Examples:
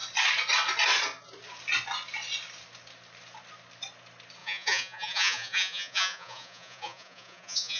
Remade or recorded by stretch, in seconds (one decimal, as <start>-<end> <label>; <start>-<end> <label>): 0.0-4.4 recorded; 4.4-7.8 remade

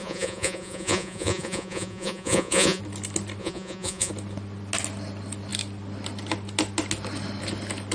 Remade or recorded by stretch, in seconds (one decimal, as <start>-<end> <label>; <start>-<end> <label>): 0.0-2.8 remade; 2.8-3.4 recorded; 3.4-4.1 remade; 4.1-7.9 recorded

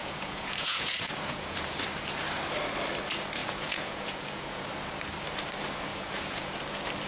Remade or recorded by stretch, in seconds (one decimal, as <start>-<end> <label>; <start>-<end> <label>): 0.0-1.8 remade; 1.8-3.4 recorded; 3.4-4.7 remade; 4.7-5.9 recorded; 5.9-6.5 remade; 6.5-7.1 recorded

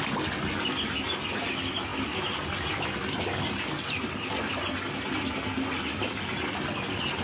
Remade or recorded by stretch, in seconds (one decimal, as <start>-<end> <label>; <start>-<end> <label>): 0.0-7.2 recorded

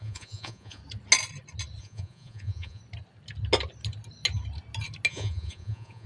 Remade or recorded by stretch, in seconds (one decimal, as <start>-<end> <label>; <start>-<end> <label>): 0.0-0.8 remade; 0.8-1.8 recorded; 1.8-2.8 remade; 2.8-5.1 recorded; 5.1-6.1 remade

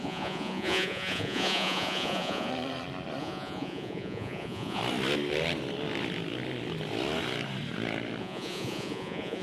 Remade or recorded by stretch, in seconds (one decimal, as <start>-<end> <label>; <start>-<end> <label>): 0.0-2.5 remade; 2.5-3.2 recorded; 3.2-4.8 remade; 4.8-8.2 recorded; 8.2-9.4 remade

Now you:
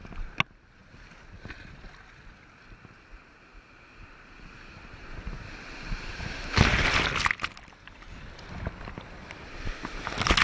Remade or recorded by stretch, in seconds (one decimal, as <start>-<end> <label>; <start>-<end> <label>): 0.0-10.4 recorded

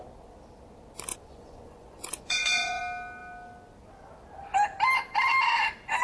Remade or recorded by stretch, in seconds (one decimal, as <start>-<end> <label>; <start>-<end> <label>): 0.0-1.1 recorded; 1.1-2.8 remade; 2.8-6.0 recorded